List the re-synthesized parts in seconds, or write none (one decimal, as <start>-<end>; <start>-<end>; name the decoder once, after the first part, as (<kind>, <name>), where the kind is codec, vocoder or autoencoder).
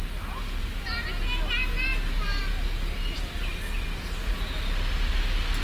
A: none